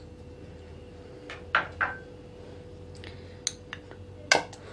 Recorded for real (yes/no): yes